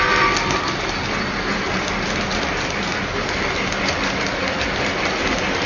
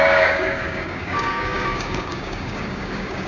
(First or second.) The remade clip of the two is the second